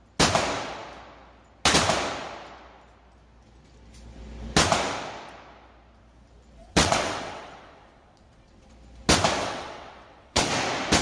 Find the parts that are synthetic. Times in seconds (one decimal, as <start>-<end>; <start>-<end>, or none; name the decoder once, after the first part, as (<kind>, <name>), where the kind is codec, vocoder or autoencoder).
6.6-8.7 (vocoder, WaveNeXt); 9.4-10.5